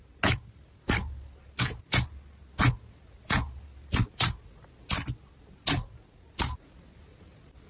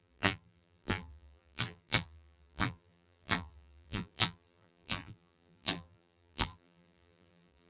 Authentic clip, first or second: first